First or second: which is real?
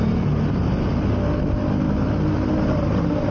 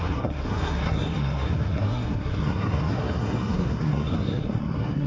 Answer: first